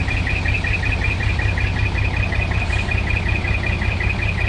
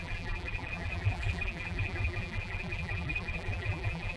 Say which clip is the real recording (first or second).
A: first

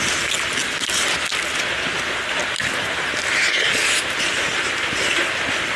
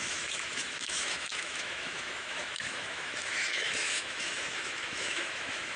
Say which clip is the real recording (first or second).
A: first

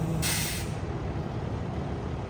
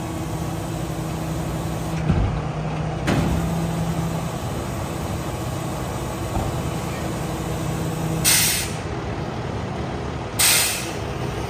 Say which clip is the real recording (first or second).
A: second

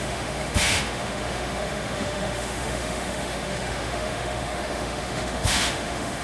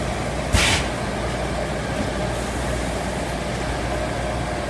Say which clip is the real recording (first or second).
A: second